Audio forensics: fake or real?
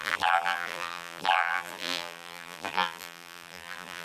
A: fake